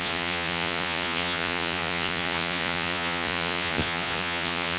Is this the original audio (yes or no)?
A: no